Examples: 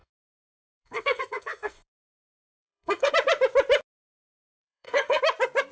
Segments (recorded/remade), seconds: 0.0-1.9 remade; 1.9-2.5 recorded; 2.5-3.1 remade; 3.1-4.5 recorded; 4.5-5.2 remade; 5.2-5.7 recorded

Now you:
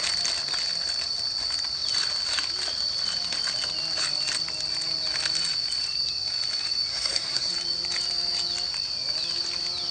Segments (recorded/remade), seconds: 0.0-6.9 recorded; 6.9-7.5 remade; 7.5-9.9 recorded